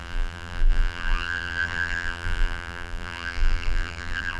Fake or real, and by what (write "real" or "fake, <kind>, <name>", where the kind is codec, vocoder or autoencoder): fake, vocoder, BigVGAN v2